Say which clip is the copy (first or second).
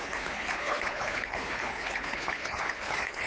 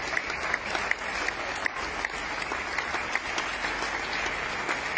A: first